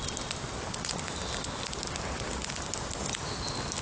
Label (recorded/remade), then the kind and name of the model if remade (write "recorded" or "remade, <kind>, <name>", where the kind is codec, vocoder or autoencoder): recorded